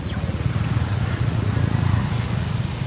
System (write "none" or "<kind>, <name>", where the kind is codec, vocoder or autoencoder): vocoder, Vocos